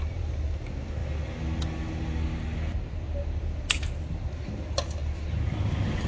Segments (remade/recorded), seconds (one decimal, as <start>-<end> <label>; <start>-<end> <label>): 0.0-6.1 recorded